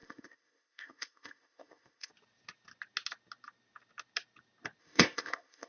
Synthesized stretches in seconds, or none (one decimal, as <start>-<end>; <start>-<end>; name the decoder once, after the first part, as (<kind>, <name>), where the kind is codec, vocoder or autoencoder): 0.0-2.1 (codec, ZipCodec); 4.8-5.7